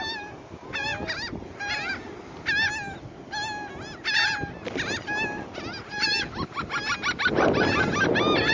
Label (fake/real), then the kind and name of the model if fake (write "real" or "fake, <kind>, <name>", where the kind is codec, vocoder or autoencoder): real